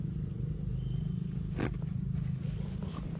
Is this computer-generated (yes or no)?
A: no